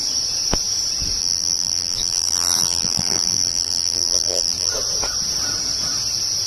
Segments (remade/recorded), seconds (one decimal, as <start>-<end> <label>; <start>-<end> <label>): 0.0-1.2 recorded; 1.2-4.7 remade; 4.7-6.5 recorded

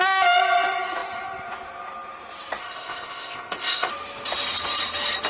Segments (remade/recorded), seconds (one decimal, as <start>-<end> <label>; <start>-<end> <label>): 0.0-2.6 recorded; 2.6-3.9 remade; 3.9-5.3 recorded